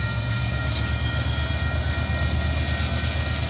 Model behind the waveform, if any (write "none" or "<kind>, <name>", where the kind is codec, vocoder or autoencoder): none